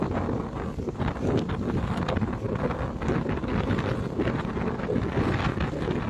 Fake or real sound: real